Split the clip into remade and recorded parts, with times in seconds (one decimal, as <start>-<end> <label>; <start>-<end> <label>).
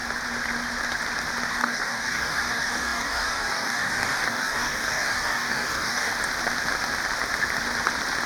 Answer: 0.0-1.5 recorded; 1.5-6.1 remade; 6.1-8.3 recorded